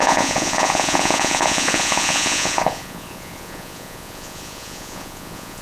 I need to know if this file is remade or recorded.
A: remade